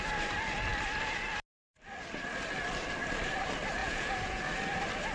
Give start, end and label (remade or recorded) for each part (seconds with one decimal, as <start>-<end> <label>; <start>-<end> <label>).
0.0-3.8 recorded; 3.8-4.4 remade; 4.4-5.1 recorded